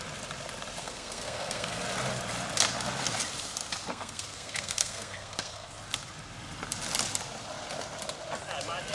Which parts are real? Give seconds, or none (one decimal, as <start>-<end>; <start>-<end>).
0.0-0.8; 1.8-3.9; 5.7-8.9